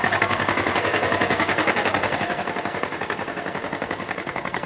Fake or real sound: fake